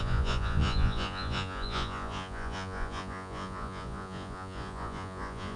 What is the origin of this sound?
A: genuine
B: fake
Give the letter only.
B